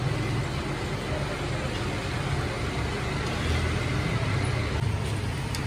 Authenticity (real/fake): real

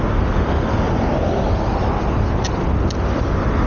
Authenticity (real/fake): real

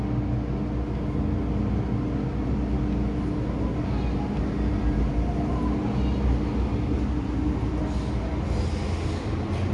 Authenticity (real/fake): real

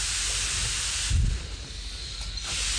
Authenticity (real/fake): real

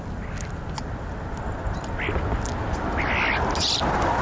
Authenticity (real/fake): real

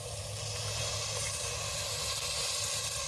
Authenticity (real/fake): real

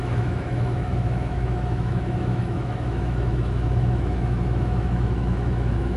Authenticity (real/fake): fake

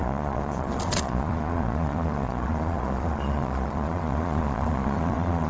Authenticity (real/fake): fake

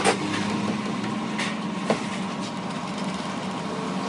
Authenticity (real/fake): real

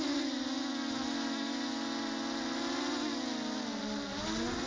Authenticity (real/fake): real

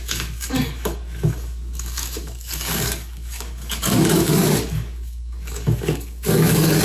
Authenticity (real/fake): fake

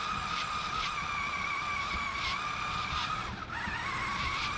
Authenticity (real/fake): real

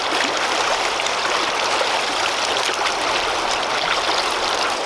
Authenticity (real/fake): real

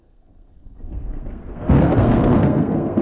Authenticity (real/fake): fake